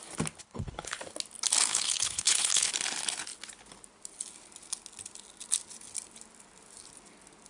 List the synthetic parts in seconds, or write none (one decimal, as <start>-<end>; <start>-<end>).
0.4-1.0; 1.7-2.7